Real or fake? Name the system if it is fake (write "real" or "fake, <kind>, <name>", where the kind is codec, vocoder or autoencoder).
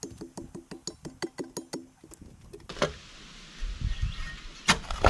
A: real